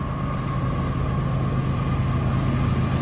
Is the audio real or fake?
real